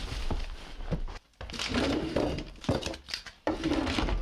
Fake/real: fake